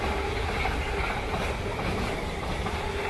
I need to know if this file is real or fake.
real